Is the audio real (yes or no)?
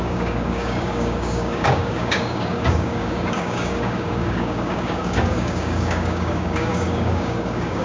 no